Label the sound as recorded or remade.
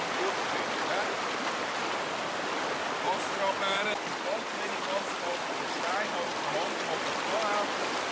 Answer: recorded